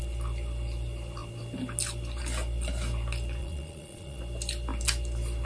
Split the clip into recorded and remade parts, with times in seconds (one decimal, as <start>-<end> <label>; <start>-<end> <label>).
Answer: 0.0-3.4 recorded; 3.4-4.2 remade; 4.2-5.5 recorded